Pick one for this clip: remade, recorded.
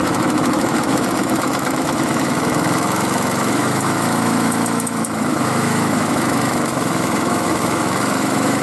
remade